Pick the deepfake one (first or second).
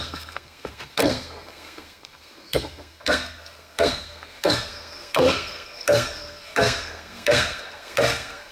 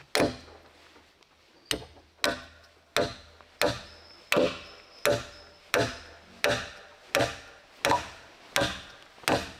first